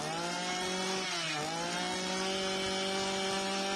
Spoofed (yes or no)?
no